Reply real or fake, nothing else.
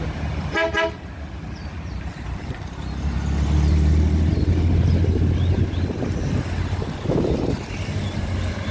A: real